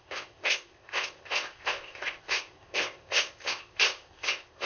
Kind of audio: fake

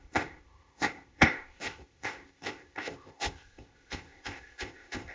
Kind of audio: fake